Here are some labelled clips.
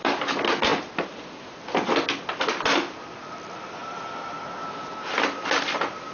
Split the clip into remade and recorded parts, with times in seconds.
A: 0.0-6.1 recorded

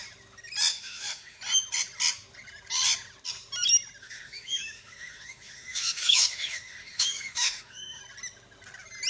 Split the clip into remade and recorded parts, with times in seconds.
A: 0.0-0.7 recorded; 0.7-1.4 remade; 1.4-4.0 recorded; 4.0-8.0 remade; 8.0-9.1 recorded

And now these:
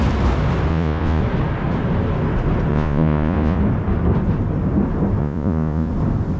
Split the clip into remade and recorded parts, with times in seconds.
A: 0.0-0.7 recorded; 0.7-1.2 remade; 1.2-2.7 recorded; 2.7-3.6 remade; 3.6-5.2 recorded; 5.2-5.9 remade; 5.9-6.4 recorded

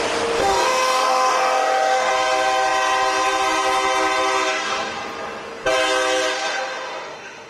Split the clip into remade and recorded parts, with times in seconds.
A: 0.0-0.4 recorded; 0.4-2.1 remade; 2.1-6.5 recorded; 6.5-7.5 remade

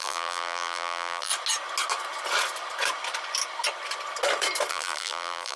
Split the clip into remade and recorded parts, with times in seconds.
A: 0.0-1.3 remade; 1.3-4.7 recorded; 4.7-5.6 remade

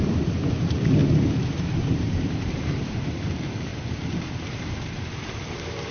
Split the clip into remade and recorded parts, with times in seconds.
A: 0.0-5.9 remade